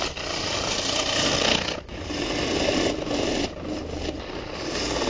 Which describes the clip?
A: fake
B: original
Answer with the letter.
B